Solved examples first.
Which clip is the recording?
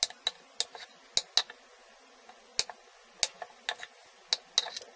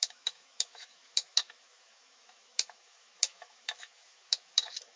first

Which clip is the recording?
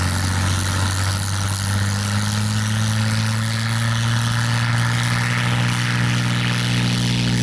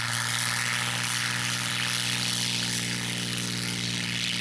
first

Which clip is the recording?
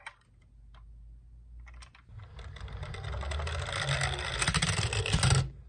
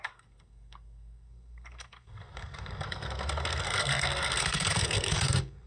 first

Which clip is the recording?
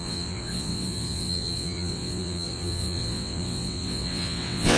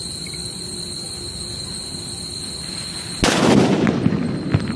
second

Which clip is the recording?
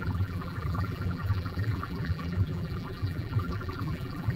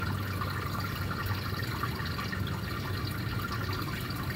second